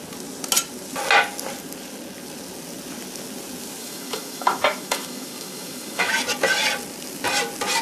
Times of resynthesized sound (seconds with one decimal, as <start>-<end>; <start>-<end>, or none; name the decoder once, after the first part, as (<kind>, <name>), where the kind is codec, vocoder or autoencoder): 3.8-6.1 (autoencoder, DAC-VAE)

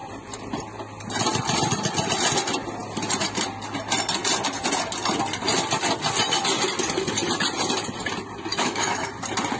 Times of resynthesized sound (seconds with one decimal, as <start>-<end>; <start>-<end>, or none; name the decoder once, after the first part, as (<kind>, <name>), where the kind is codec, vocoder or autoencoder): 8.5-9.1 (autoencoder, DAC-VAE)